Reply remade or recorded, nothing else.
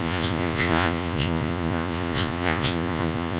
remade